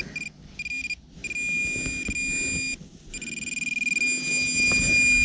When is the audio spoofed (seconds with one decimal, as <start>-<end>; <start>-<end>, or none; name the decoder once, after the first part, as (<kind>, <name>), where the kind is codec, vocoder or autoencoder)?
none